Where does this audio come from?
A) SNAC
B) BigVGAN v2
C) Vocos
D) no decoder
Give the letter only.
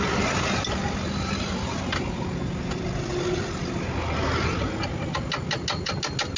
D